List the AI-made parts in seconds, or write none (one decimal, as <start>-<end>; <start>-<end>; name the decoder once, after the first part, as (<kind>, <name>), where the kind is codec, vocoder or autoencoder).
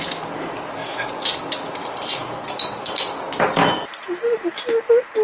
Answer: none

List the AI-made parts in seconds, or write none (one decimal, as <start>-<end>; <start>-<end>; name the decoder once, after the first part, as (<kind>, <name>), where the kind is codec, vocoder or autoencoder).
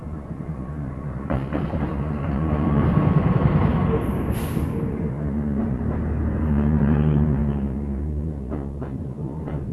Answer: 0.0-2.8 (vocoder, Vocos); 4.9-5.8; 6.4-9.7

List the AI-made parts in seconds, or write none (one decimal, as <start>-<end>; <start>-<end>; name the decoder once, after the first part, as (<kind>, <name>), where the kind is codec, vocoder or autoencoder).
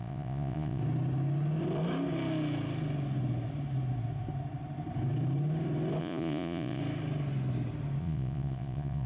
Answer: 0.0-0.8 (vocoder, Vocos); 6.0-6.8; 8.0-9.1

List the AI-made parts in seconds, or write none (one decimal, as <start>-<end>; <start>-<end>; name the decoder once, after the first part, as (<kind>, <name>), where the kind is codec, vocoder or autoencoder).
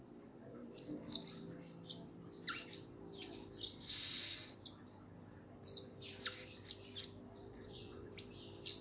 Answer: 7.5-8.1 (vocoder, Vocos)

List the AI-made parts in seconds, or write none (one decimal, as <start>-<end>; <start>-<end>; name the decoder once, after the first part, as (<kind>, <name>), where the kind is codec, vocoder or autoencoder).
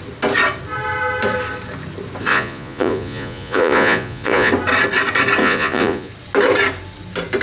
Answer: 2.3-4.5 (vocoder, Vocos); 5.4-6.1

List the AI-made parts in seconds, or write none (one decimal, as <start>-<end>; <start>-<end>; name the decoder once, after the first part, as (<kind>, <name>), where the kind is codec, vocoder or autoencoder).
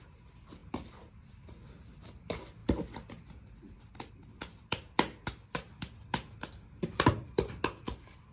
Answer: none